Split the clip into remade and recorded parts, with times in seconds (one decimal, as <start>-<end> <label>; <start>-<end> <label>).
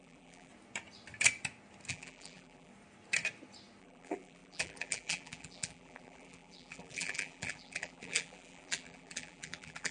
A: 0.0-0.5 remade; 0.5-1.9 recorded; 1.9-2.7 remade; 2.7-3.8 recorded; 3.8-9.9 remade